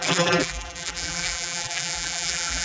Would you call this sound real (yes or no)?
no